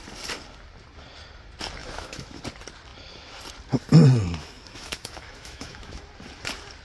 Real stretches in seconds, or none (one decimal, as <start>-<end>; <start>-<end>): 0.0-1.8; 2.4-4.4; 6.0-6.8